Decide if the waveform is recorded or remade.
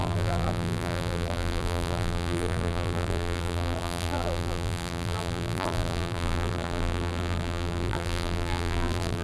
remade